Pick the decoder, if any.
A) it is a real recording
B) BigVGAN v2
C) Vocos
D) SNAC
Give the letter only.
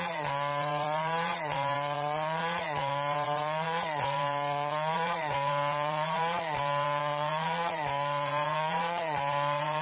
C